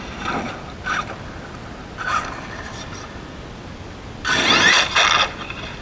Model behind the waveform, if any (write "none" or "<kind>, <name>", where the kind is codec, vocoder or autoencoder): none